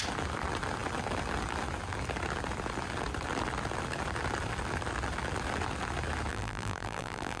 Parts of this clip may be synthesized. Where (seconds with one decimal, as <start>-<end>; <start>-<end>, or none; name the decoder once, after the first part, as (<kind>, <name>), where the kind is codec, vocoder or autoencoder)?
6.3-7.4 (vocoder, BigVGAN v2)